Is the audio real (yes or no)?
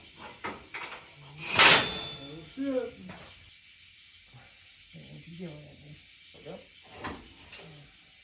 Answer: yes